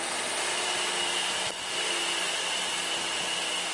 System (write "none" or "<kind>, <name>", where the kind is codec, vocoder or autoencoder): none